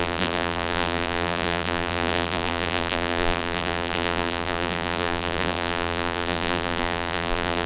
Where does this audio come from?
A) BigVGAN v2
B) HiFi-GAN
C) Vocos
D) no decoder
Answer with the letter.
A